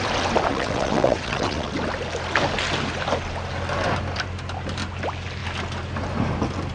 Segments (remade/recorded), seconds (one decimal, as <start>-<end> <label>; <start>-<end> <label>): 0.0-0.5 recorded; 0.5-1.7 remade; 1.7-6.7 recorded